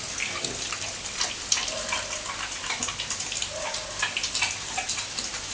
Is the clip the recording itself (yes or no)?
yes